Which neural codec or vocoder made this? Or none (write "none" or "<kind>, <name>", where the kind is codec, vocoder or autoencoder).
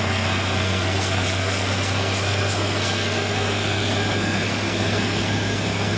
codec, SNAC